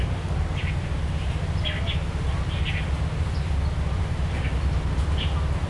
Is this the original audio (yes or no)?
yes